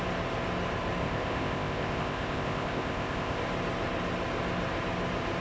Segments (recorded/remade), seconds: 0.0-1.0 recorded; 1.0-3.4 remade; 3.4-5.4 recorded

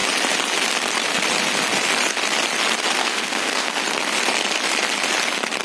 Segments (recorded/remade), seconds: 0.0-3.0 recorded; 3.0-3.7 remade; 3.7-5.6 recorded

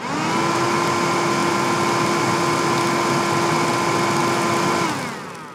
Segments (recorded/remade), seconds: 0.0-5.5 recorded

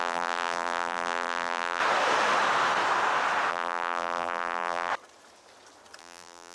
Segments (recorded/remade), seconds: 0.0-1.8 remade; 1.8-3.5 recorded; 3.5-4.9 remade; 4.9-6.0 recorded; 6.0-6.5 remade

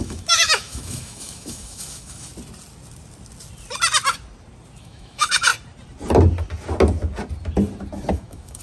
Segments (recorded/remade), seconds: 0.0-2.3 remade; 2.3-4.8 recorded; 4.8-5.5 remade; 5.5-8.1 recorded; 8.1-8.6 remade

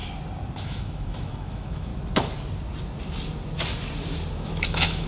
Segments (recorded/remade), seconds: 0.0-0.6 recorded; 0.6-1.9 remade; 1.9-4.3 recorded; 4.3-5.1 remade

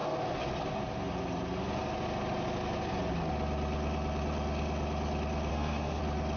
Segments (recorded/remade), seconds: 0.0-5.5 recorded; 5.5-6.0 remade; 6.0-6.4 recorded